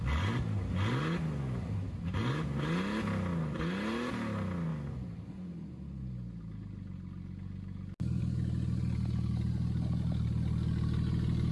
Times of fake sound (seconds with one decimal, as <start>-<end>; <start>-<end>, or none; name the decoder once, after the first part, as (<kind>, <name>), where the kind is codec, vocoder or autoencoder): none